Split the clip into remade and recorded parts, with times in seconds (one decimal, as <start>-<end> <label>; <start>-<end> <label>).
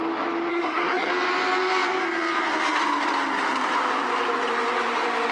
0.0-0.5 recorded; 0.5-1.1 remade; 1.1-5.3 recorded